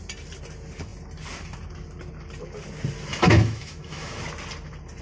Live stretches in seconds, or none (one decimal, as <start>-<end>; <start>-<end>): 0.0-3.1; 4.2-5.0